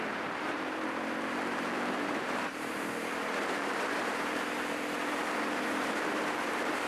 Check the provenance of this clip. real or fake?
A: fake